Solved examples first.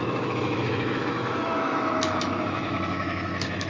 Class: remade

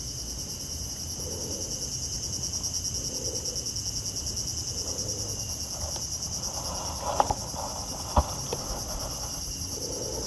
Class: recorded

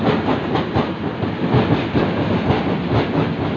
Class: recorded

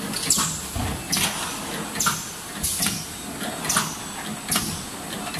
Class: recorded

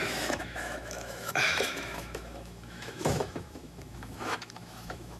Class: remade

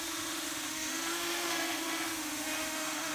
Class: remade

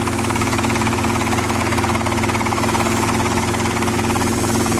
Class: remade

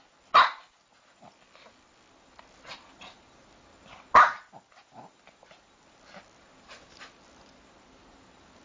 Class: recorded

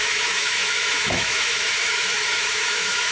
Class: remade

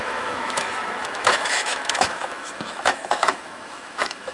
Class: remade